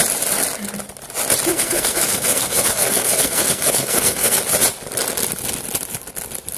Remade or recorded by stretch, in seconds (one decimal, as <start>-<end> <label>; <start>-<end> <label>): 0.0-1.5 recorded; 1.5-4.4 remade; 4.4-6.6 recorded